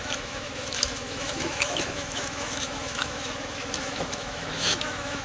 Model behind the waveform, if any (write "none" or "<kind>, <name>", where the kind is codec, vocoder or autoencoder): autoencoder, DAC-VAE